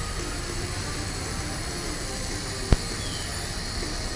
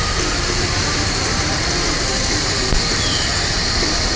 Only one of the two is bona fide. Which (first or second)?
first